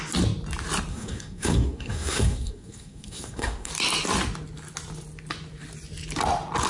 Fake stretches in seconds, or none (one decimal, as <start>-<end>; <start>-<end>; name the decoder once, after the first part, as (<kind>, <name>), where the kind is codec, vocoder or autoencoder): 0.9-3.7 (codec, SNAC)